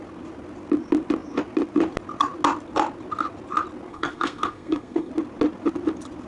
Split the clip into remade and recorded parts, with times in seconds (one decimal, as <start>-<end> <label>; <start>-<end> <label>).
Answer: 0.0-3.9 recorded; 3.9-5.1 remade; 5.1-6.3 recorded